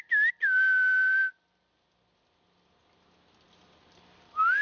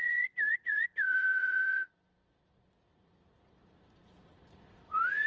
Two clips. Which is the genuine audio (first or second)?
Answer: first